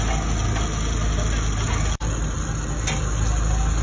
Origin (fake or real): real